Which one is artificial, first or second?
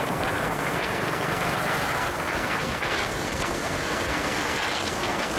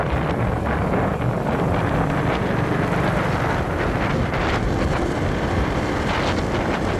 first